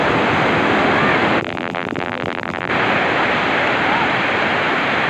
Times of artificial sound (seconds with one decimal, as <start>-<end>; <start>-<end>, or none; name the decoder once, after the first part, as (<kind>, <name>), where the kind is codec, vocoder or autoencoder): 1.4-2.7 (vocoder, BigVGAN v2)